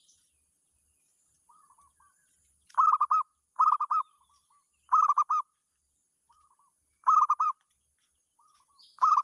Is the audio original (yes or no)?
no